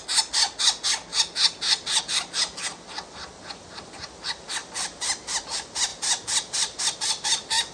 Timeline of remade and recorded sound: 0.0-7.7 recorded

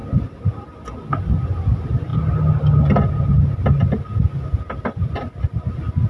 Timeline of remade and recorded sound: 0.0-6.1 recorded

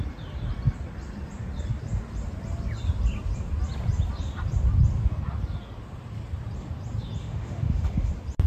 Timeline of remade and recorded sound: 0.0-7.2 recorded; 7.2-8.1 remade; 8.1-8.5 recorded

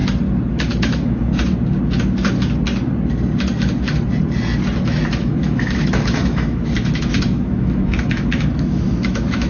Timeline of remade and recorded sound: 0.0-0.5 recorded; 0.5-1.3 remade; 1.3-5.2 recorded; 5.2-9.5 remade